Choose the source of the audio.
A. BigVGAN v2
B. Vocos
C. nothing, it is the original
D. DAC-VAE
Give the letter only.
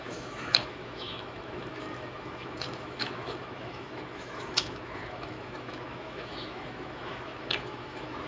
D